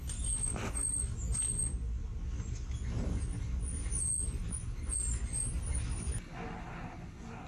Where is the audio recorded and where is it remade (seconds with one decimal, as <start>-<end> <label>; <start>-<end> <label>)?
0.0-7.5 recorded